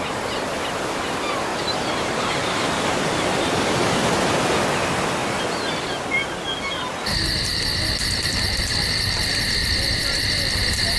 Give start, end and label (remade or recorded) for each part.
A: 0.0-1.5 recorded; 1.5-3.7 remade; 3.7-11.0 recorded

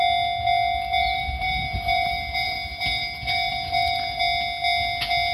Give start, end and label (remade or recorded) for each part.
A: 0.0-1.0 recorded; 1.0-4.2 remade; 4.2-5.3 recorded

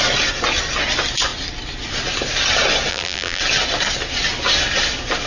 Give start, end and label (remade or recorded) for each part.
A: 0.0-2.9 recorded; 2.9-3.4 remade; 3.4-5.3 recorded

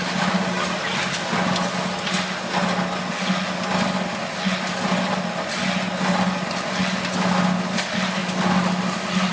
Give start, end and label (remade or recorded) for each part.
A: 0.0-9.3 recorded

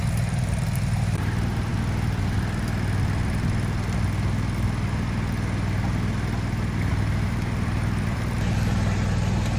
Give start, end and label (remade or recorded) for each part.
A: 0.0-1.7 remade; 1.7-6.9 recorded; 6.9-9.6 remade

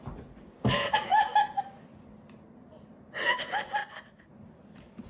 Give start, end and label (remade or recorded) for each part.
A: 0.0-5.1 recorded

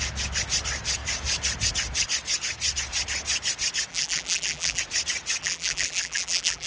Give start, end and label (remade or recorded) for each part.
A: 0.0-3.9 recorded; 3.9-4.8 remade; 4.8-5.4 recorded; 5.4-6.7 remade

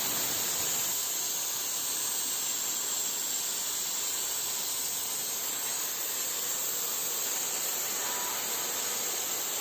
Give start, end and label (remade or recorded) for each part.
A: 0.0-9.6 recorded